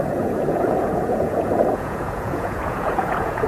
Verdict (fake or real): fake